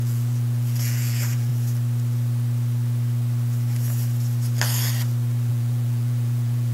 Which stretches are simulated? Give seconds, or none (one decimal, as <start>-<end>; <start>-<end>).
0.0-1.5; 5.5-6.7